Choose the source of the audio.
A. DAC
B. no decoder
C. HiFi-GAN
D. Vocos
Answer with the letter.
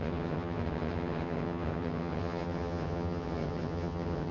C